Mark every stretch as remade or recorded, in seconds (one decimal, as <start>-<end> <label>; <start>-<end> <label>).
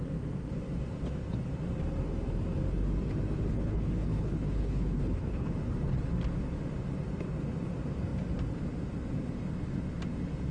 0.0-3.5 recorded; 3.5-5.5 remade; 5.5-10.5 recorded